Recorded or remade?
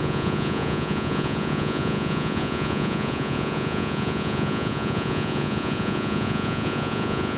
remade